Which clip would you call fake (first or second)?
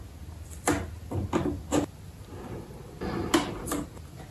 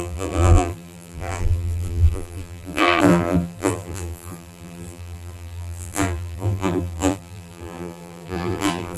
second